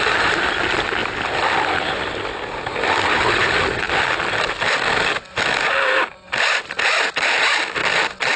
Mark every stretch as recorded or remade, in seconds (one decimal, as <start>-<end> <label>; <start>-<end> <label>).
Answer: 0.0-8.4 recorded

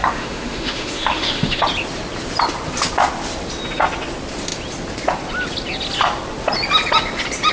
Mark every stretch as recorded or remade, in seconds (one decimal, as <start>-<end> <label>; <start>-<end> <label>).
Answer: 0.0-1.6 remade; 1.6-7.5 recorded